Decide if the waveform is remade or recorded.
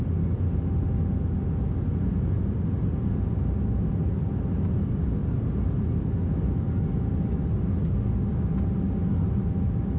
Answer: recorded